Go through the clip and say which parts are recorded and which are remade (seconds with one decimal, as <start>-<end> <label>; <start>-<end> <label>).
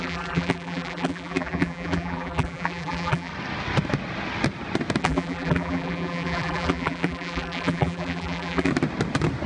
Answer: 0.0-3.3 remade; 3.3-5.0 recorded; 5.0-8.7 remade; 8.7-9.5 recorded